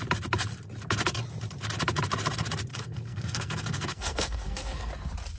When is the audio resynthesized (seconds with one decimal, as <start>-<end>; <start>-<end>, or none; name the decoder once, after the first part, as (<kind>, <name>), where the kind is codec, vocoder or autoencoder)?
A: 2.7-4.9 (codec, SNAC)